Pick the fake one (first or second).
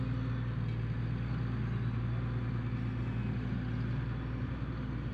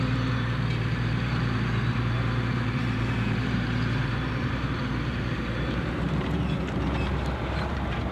second